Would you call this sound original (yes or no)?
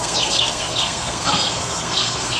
no